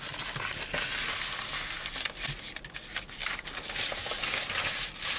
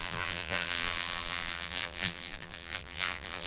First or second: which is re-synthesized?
second